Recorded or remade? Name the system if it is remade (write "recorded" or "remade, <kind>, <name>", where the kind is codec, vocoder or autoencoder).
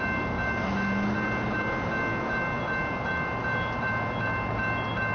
recorded